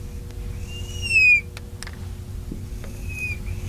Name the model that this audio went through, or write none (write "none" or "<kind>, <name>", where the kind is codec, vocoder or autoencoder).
none